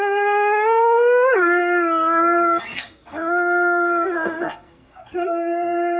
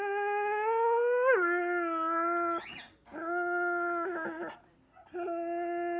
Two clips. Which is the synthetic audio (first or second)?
first